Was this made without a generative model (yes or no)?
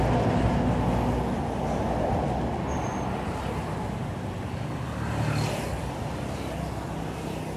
yes